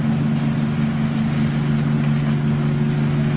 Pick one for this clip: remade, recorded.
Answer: recorded